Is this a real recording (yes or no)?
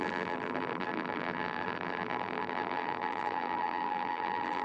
no